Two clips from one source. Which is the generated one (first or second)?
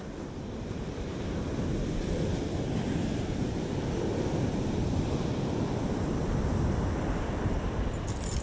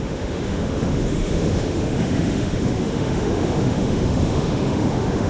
second